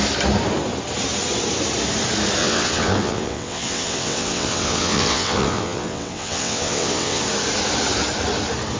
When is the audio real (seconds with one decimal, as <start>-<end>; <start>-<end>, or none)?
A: 0.0-2.4; 7.2-8.8